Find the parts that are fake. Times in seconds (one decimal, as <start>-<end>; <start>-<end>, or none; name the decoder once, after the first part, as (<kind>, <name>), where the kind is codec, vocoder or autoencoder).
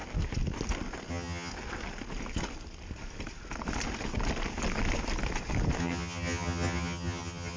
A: 1.1-1.5 (vocoder, HiFi-GAN); 5.8-7.6